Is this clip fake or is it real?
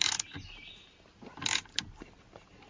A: real